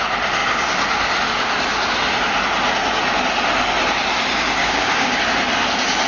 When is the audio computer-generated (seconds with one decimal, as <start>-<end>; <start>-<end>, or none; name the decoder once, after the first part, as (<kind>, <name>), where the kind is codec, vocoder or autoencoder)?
4.6-5.2 (codec, DAC)